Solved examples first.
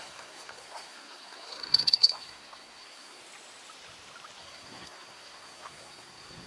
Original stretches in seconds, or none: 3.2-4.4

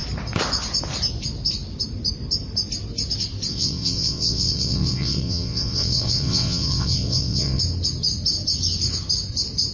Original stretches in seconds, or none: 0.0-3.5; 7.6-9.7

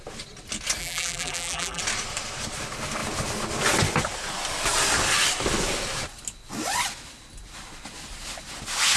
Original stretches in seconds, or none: 0.0-0.8; 1.8-9.0

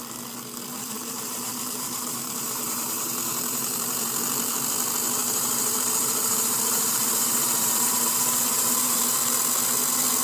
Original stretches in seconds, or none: 0.0-0.7; 4.2-5.2; 9.0-10.2

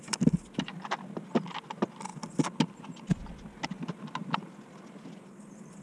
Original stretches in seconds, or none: 0.0-5.8

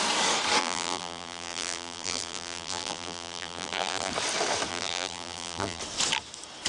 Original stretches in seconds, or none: 0.0-0.6; 4.1-4.7; 5.8-6.7